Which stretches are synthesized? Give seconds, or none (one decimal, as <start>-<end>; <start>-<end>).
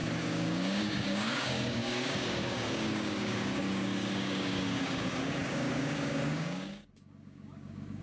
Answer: 0.0-8.0